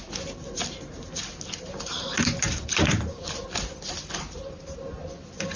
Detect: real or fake real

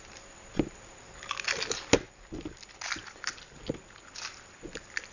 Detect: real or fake real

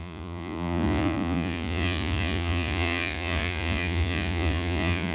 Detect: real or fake fake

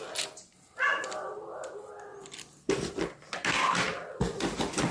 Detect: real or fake real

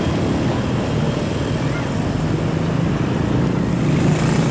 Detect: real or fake real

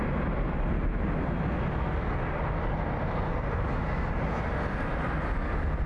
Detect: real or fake real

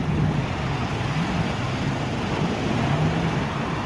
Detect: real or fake real